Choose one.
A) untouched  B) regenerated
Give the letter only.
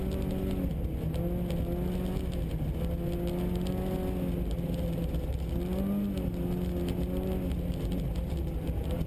A